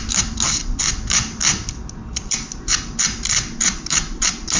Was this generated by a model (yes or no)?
no